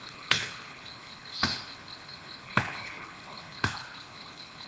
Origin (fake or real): fake